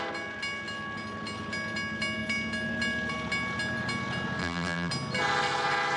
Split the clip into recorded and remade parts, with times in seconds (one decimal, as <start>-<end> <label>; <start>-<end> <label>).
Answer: 0.0-4.4 recorded; 4.4-4.9 remade; 4.9-6.0 recorded